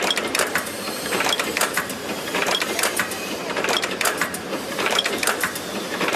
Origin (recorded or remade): remade